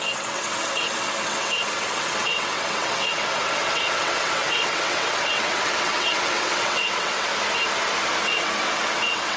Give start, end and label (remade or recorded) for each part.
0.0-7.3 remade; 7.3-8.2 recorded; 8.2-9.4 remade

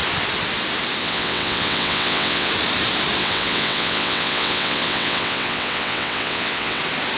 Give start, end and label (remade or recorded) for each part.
0.0-1.0 recorded; 1.0-2.5 remade; 2.5-3.2 recorded; 3.2-6.8 remade; 6.8-7.2 recorded